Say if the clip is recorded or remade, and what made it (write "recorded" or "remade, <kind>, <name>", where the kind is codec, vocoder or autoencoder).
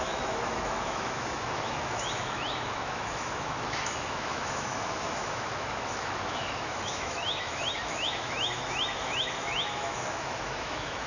remade, autoencoder, DAC-VAE